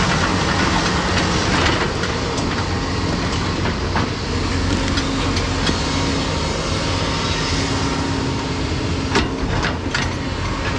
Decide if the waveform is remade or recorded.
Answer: recorded